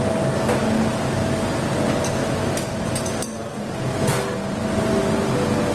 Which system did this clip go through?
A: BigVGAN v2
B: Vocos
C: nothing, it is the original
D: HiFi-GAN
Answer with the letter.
C